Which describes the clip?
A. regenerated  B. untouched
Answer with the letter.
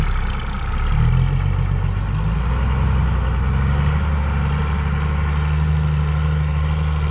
B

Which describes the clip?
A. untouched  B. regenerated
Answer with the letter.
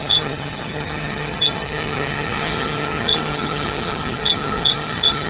B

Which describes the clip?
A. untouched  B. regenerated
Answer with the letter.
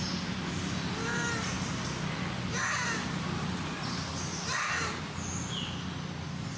A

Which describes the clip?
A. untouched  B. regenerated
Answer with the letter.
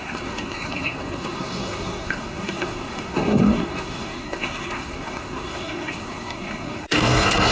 B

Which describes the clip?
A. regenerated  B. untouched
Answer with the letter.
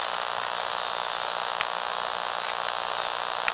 B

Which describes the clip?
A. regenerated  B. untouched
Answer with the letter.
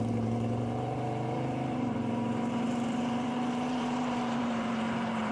A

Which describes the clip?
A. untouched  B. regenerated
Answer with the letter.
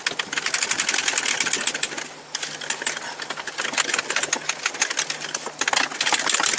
A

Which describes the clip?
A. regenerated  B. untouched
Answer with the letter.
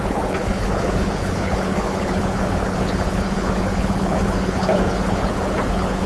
A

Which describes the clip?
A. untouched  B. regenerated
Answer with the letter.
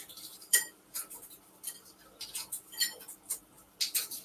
A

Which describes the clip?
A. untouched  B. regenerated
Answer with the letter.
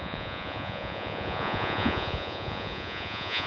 B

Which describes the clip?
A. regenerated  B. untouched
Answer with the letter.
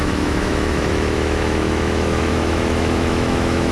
A